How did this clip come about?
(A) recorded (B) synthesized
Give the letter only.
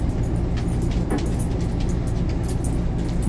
A